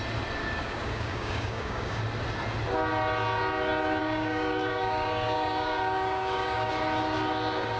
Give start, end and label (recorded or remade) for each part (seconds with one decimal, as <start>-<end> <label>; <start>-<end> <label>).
0.0-0.4 recorded; 0.4-2.0 remade; 2.0-4.0 recorded; 4.0-6.7 remade; 6.7-7.8 recorded